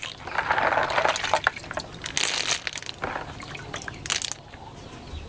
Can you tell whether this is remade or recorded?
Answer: recorded